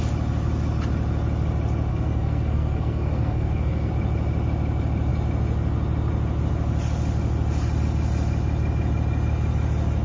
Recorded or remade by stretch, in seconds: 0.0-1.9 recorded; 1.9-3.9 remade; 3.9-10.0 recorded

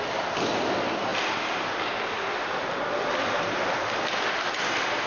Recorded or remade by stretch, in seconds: 0.0-5.1 recorded

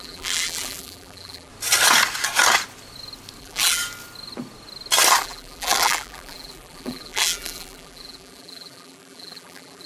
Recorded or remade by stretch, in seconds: 0.0-1.5 remade; 1.5-3.4 recorded; 3.4-3.8 remade; 3.8-5.2 recorded; 5.2-9.9 remade

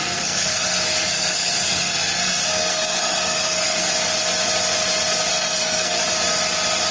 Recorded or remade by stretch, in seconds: 0.0-3.9 remade; 3.9-5.3 recorded; 5.3-6.0 remade; 6.0-6.9 recorded